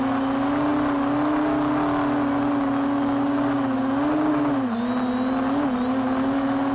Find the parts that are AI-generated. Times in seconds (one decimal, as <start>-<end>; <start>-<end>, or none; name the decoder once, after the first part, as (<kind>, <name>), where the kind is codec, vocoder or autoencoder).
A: none